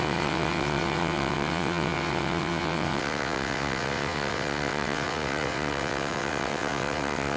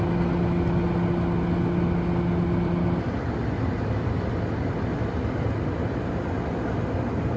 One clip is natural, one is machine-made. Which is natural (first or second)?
second